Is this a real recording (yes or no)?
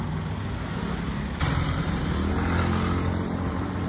yes